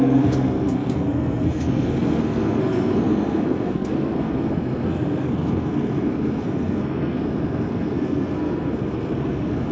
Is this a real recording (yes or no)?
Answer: no